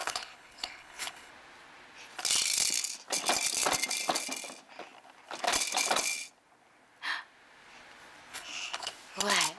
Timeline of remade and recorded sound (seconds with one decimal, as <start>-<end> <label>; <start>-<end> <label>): 0.0-1.3 remade; 1.3-8.3 recorded; 8.3-8.9 remade; 8.9-9.6 recorded